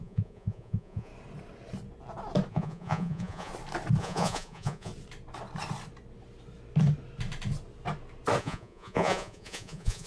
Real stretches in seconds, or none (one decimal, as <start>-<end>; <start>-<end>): 1.1-2.5; 3.5-4.0; 4.9-8.4

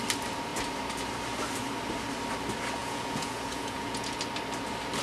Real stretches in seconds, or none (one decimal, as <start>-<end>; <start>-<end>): 0.0-2.8; 4.2-5.0

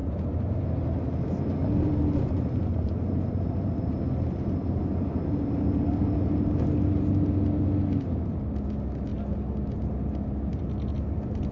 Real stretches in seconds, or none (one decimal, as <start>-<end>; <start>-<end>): 0.0-11.5

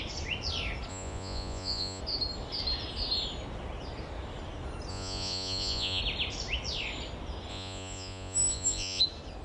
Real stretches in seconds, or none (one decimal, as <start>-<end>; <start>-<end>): 0.0-0.9; 2.0-4.9; 6.0-7.5; 9.0-9.4

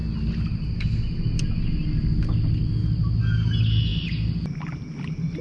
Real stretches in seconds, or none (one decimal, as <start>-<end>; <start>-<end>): 0.0-5.4

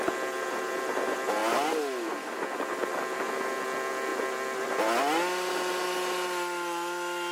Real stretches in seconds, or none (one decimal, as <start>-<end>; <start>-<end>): 0.0-7.3